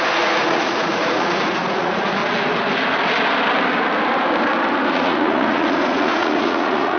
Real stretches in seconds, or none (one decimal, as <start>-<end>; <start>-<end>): 2.2-4.9